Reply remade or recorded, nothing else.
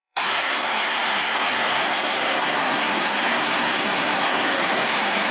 remade